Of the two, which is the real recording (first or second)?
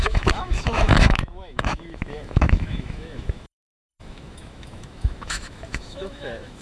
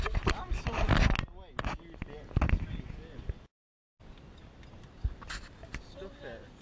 second